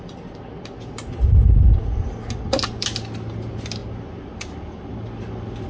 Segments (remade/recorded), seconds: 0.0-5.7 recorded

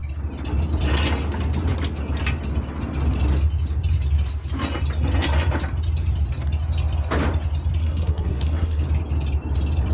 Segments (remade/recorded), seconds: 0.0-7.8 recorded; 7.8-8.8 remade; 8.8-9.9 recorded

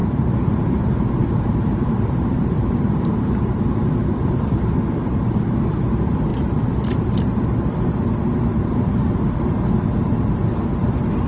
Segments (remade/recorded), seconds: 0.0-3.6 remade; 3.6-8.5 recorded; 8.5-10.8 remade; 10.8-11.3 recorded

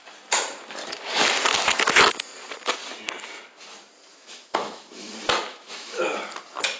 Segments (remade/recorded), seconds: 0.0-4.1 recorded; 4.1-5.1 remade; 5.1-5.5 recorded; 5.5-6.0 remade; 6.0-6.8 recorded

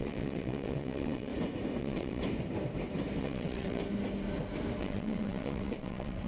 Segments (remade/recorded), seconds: 0.0-1.3 remade; 1.3-1.8 recorded; 1.8-2.2 remade; 2.2-3.2 recorded; 3.2-3.8 remade; 3.8-4.8 recorded; 4.8-6.3 remade

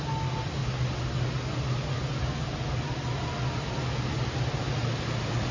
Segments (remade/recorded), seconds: 0.0-5.5 recorded